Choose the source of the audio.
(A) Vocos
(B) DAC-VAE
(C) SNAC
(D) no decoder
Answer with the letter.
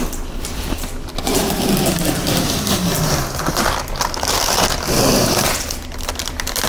D